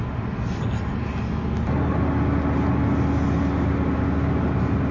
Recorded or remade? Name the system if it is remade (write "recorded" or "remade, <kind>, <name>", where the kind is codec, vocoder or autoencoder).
recorded